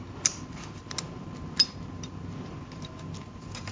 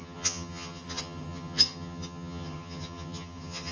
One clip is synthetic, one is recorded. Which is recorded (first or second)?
first